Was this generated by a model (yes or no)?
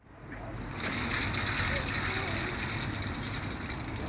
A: no